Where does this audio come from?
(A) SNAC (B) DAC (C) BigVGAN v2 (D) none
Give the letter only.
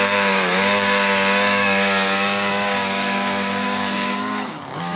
B